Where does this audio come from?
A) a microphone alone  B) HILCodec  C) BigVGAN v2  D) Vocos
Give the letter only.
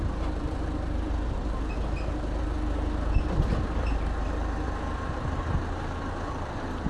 C